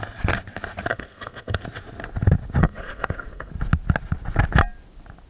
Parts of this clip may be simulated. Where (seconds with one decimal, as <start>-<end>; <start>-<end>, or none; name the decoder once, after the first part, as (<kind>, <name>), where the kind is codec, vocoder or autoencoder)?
0.9-1.6 (codec, SNAC); 2.6-3.5

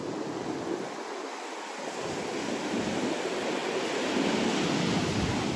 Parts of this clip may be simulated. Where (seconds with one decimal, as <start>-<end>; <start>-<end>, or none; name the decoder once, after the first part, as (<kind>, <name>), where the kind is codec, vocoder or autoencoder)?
none

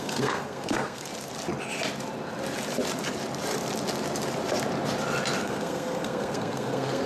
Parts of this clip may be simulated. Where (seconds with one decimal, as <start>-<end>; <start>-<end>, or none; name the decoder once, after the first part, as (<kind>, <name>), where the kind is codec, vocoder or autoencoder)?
0.0-1.1 (codec, SNAC); 5.4-7.1

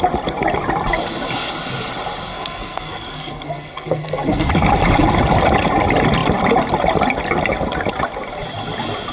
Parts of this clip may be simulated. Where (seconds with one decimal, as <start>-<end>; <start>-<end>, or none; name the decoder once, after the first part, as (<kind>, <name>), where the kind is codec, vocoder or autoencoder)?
2.3-4.5 (codec, SNAC)

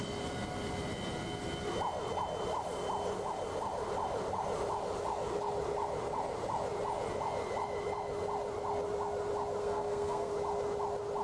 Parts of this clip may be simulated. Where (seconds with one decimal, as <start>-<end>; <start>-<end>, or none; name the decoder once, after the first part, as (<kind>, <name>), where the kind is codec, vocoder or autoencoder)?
9.6-10.3 (codec, SNAC)